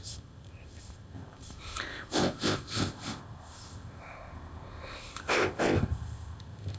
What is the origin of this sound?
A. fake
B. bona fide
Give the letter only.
A